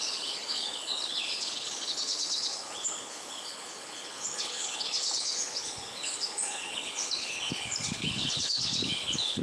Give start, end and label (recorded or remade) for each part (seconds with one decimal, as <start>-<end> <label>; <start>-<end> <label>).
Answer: 0.0-9.4 remade